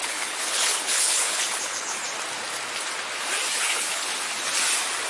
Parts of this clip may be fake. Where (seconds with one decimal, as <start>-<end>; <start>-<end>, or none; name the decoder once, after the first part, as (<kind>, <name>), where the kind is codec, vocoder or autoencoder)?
0.0-2.0 (codec, HILCodec); 3.6-4.1

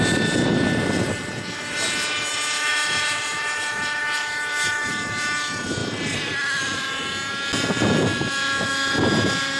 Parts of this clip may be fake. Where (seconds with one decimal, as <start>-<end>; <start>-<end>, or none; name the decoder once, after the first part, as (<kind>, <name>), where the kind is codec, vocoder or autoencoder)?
none

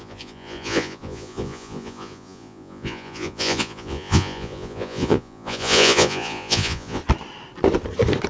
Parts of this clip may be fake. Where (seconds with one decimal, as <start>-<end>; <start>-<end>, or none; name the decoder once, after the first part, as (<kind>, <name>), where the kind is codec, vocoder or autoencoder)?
0.0-7.0 (vocoder, Vocos)

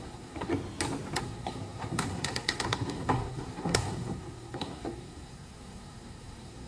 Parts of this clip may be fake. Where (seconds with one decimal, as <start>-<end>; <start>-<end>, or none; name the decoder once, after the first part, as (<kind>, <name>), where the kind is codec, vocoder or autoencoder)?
0.0-0.5 (codec, SNAC); 1.2-6.7